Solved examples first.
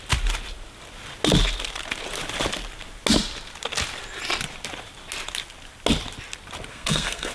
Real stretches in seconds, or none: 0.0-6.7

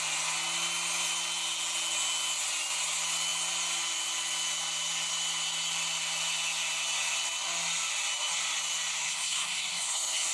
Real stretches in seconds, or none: 0.0-9.0

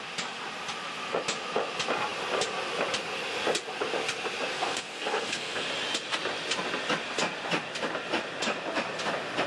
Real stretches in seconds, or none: 0.0-4.5; 5.7-9.5

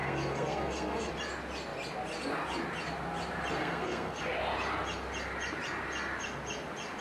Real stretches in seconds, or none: 1.1-3.6; 4.2-7.0

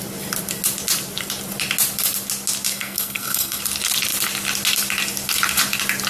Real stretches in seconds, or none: 0.0-2.7; 3.6-6.1

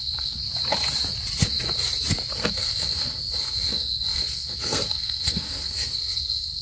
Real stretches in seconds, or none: 0.4-2.3

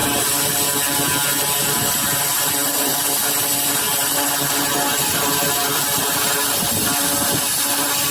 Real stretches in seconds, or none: 0.0-8.1

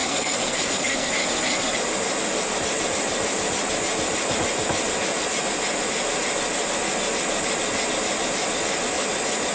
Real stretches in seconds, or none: 1.1-9.5